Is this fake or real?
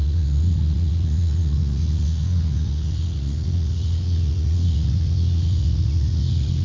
fake